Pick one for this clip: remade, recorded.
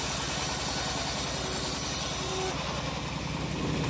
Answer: recorded